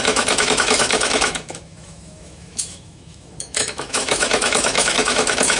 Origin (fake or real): fake